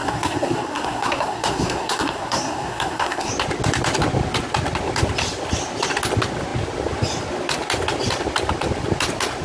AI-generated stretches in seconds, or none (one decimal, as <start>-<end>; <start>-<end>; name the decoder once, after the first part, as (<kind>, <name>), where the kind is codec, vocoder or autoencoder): 0.0-3.3 (codec, SNAC)